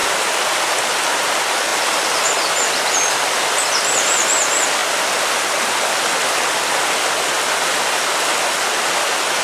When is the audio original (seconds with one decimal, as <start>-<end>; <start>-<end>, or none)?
0.0-9.4